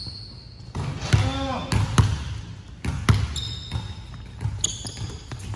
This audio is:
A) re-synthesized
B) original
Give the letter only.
B